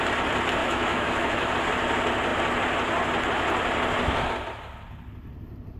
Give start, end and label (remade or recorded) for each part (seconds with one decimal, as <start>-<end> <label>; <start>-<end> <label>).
0.0-0.6 recorded; 0.6-1.5 remade; 1.5-5.8 recorded